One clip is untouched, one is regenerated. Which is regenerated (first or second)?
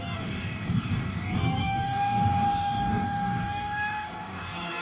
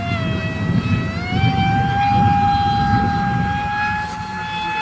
first